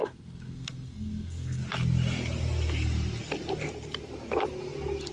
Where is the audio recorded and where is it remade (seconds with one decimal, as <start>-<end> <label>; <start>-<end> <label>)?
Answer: 0.0-1.6 remade; 1.6-5.1 recorded